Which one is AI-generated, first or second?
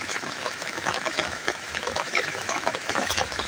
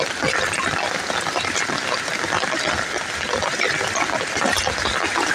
first